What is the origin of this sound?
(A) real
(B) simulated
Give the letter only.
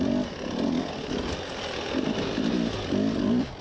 A